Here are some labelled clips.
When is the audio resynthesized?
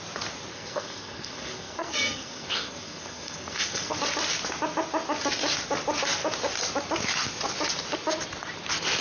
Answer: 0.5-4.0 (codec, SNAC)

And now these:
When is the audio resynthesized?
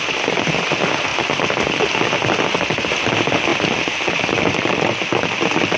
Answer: 3.5-5.1 (vocoder, BigVGAN v2)